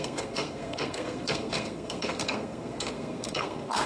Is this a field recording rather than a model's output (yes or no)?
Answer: no